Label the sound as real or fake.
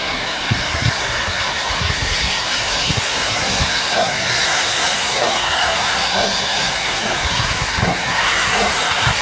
fake